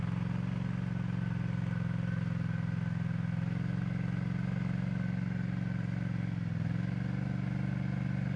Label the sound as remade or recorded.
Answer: recorded